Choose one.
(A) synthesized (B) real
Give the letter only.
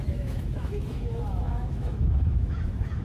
A